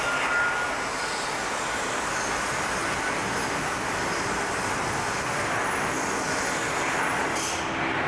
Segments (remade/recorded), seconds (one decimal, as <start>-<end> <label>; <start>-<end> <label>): 0.0-8.1 recorded